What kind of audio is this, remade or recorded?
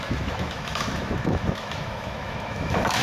remade